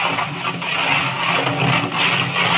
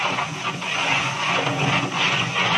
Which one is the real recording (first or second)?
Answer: first